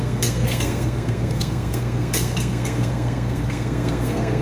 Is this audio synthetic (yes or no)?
yes